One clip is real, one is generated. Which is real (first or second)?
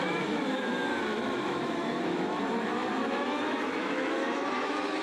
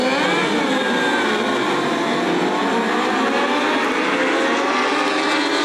second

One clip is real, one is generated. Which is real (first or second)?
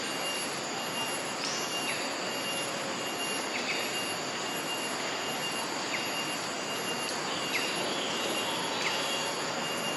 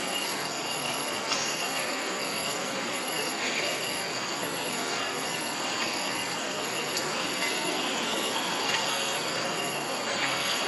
first